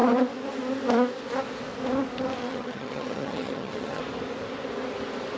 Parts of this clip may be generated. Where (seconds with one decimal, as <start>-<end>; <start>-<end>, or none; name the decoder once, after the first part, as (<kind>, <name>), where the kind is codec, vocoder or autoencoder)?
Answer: 2.4-4.0 (vocoder, HiFi-GAN)